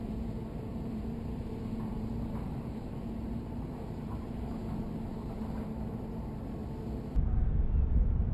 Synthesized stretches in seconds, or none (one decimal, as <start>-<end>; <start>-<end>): 0.0-6.6; 7.9-8.3